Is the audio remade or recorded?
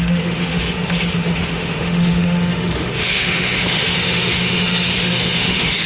remade